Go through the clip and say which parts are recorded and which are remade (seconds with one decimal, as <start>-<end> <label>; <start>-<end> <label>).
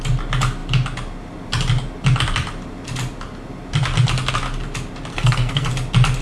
0.0-5.1 recorded; 5.1-5.7 remade; 5.7-6.2 recorded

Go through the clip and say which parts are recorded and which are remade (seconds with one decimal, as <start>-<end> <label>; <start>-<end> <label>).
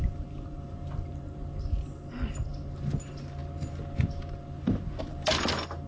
0.0-5.9 recorded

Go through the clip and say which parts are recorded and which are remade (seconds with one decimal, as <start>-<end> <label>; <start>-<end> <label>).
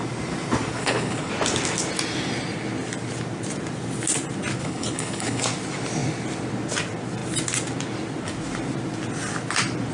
0.0-0.8 recorded; 0.8-1.3 remade; 1.3-4.6 recorded; 4.6-5.4 remade; 5.4-9.9 recorded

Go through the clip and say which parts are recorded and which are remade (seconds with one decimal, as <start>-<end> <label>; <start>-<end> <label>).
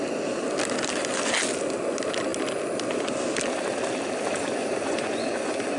0.0-4.6 recorded; 4.6-5.8 remade